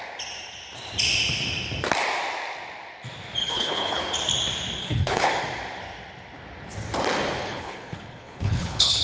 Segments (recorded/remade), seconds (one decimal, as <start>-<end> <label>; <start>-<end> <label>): 0.0-3.4 recorded; 3.4-4.0 remade; 4.0-4.8 recorded; 4.8-5.3 remade; 5.3-7.4 recorded; 7.4-9.0 remade